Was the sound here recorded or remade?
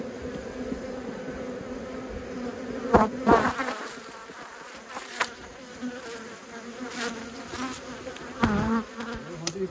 recorded